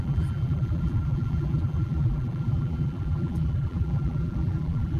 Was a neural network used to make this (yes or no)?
yes